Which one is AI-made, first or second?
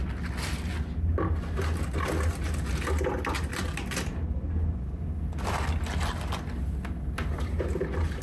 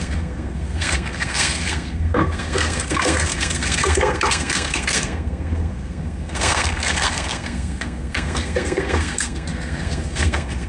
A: second